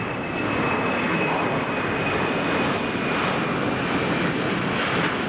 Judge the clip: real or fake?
real